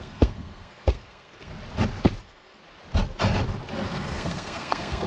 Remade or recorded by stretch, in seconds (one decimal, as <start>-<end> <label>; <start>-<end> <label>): 0.0-1.5 remade; 1.5-2.2 recorded; 2.2-2.6 remade; 2.6-3.9 recorded; 3.9-5.1 remade